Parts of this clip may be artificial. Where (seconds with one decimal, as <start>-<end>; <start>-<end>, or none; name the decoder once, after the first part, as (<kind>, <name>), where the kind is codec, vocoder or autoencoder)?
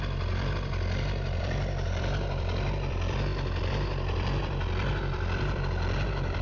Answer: 0.0-6.4 (vocoder, BigVGAN v2)